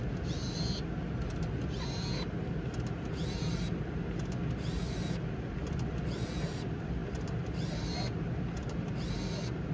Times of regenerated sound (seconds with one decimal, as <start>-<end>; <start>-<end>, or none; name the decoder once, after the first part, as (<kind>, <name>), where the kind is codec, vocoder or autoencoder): none

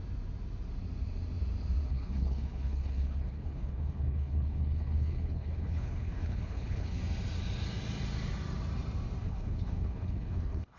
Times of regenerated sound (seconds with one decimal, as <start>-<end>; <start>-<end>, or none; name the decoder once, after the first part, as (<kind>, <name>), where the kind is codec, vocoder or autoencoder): 1.9-7.0 (codec, HILCodec); 9.2-10.8

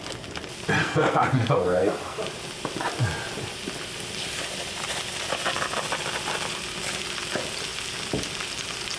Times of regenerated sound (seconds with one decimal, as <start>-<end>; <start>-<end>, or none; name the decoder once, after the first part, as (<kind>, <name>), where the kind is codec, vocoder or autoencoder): 0.8-2.2 (codec, SNAC)

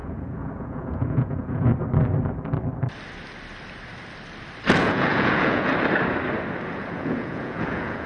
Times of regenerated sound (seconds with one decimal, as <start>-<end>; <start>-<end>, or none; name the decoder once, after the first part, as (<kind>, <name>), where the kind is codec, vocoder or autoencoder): 0.0-1.7 (vocoder, Vocos); 4.8-5.7; 6.7-8.1

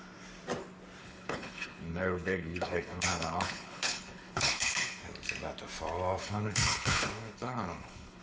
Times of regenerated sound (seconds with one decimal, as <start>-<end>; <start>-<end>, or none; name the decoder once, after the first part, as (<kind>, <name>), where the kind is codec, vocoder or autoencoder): 1.0-5.0 (codec, HILCodec); 6.2-8.2

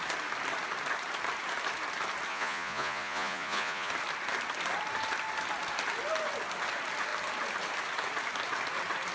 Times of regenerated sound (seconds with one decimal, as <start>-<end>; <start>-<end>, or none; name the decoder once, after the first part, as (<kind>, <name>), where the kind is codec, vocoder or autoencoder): 2.3-3.9 (vocoder, Vocos)